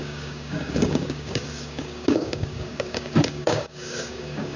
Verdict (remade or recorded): remade